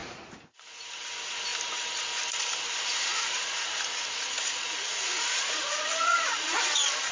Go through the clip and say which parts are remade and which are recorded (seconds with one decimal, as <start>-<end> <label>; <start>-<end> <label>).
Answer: 0.0-0.6 remade; 0.6-3.1 recorded; 3.1-6.6 remade; 6.6-7.1 recorded